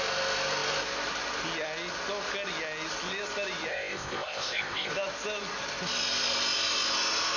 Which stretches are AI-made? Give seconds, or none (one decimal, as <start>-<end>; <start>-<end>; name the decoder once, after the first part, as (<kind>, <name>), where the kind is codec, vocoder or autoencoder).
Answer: 3.7-4.9 (codec, ZipCodec)